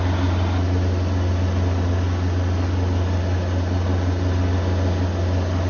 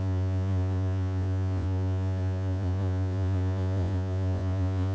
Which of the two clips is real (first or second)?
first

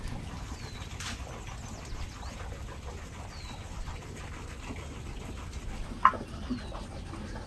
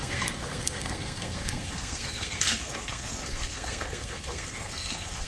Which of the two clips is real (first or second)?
first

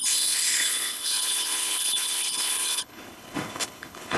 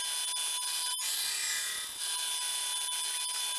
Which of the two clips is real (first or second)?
second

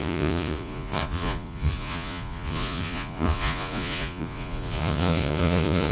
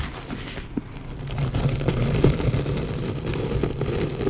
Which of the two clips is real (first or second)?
second